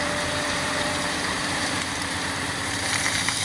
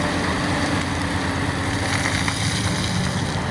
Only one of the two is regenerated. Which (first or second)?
first